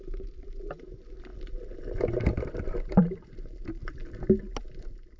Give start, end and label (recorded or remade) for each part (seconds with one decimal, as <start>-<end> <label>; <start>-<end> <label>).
0.0-1.3 remade; 1.3-2.2 recorded; 2.2-4.0 remade; 4.0-5.2 recorded